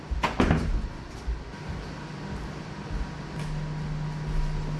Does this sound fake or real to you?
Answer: real